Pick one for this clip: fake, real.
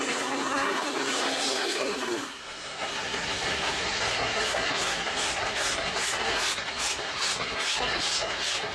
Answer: fake